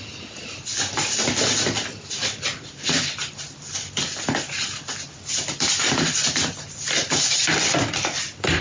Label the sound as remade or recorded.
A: recorded